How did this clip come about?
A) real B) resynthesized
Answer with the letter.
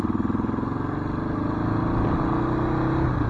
A